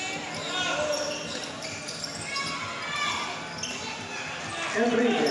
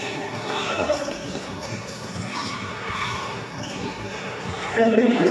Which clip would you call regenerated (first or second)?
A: second